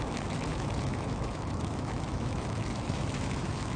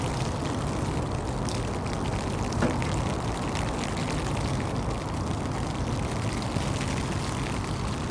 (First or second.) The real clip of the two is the second